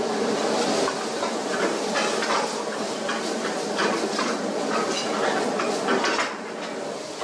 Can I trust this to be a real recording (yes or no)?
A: yes